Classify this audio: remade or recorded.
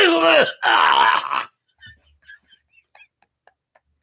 recorded